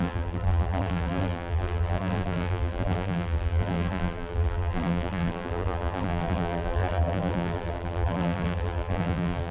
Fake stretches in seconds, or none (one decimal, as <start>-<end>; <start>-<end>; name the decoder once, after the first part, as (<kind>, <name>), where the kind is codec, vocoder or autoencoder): 0.0-9.5 (vocoder, BigVGAN v2)